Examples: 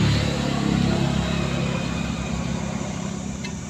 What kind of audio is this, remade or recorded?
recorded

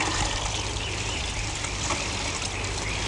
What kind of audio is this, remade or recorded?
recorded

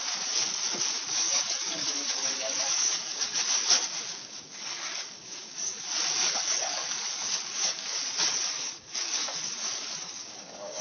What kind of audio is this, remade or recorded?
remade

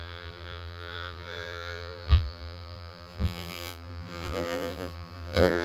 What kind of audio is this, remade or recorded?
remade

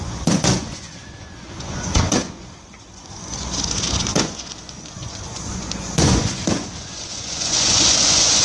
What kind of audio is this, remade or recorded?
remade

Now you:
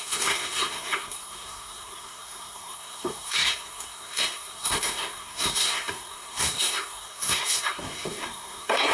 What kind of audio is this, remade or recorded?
remade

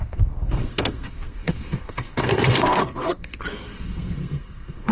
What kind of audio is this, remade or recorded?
remade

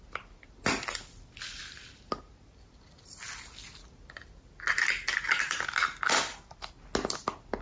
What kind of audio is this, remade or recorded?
recorded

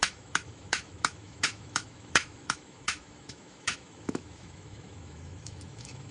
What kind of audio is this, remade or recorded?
remade